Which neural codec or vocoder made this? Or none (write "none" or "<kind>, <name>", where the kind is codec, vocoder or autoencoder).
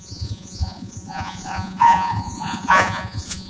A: vocoder, Vocos